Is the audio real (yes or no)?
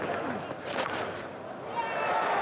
yes